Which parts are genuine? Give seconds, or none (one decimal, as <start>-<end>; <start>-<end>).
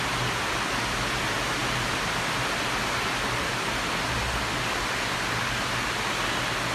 0.0-6.7